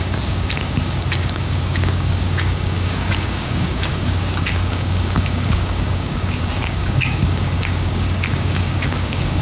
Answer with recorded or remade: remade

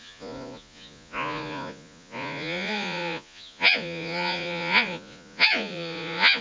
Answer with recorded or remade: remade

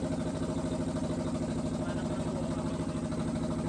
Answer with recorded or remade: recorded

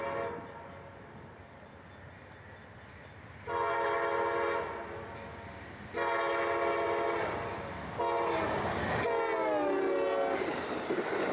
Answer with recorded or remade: recorded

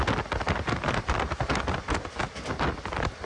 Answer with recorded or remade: recorded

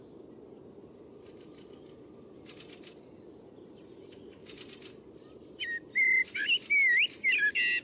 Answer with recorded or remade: recorded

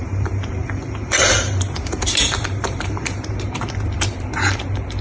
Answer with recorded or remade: remade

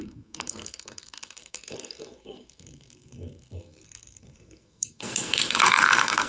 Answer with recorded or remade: remade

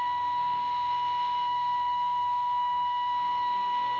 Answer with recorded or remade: remade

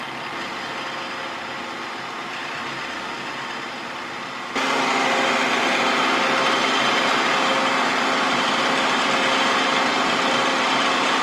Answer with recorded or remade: recorded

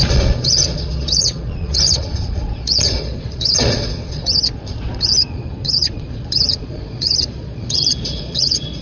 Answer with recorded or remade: remade